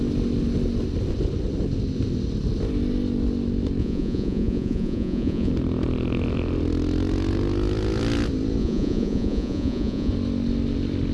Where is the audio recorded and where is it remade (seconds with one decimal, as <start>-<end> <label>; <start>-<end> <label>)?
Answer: 0.0-3.8 recorded; 3.8-5.5 remade; 5.5-8.6 recorded; 8.6-10.1 remade; 10.1-11.1 recorded